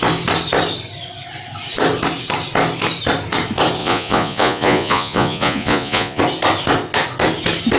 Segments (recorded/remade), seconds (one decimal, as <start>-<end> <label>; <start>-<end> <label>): 0.0-3.8 recorded; 3.8-6.2 remade; 6.2-7.8 recorded